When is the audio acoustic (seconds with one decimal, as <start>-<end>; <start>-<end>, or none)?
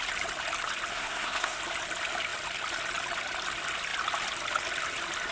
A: 0.0-0.9; 1.6-5.3